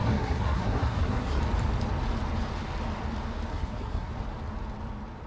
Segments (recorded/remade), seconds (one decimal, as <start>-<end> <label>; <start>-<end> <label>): 0.0-1.4 remade; 1.4-3.5 recorded; 3.5-4.1 remade; 4.1-5.3 recorded